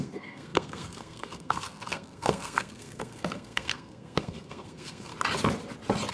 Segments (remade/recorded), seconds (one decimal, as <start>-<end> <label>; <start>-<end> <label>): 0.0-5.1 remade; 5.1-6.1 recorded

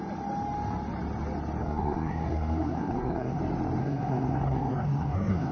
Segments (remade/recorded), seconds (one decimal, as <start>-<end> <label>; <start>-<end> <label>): 0.0-1.6 recorded; 1.6-3.4 remade; 3.4-3.8 recorded; 3.8-5.5 remade

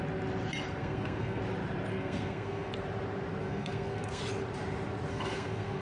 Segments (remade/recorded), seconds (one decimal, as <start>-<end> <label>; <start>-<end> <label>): 0.0-0.8 recorded; 0.8-1.4 remade; 1.4-1.9 recorded; 1.9-2.7 remade; 2.7-3.4 recorded; 3.4-4.2 remade; 4.2-5.1 recorded; 5.1-5.8 remade

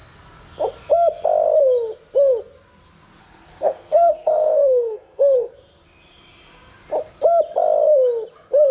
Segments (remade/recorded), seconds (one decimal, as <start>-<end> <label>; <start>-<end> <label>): 0.0-3.2 recorded; 3.2-5.5 remade; 5.5-8.7 recorded

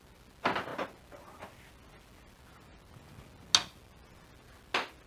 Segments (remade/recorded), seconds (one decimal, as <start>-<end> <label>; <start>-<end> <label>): 0.0-5.1 recorded